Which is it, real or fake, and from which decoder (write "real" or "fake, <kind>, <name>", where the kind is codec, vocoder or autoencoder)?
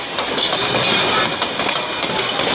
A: real